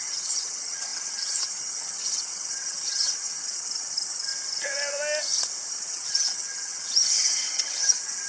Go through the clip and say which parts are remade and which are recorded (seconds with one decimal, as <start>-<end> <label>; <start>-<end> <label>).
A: 0.0-4.3 remade; 4.3-5.7 recorded; 5.7-8.3 remade